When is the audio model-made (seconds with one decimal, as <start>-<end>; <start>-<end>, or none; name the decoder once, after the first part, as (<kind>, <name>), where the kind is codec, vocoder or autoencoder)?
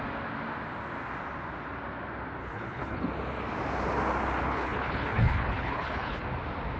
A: 2.4-3.0 (codec, HILCodec); 4.4-6.2